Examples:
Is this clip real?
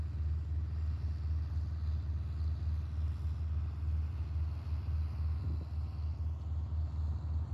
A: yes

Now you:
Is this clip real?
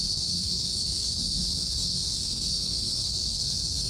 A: no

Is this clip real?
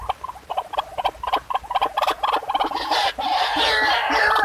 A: no